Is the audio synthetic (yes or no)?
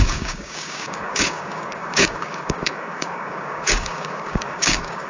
yes